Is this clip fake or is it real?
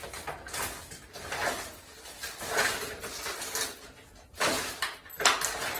real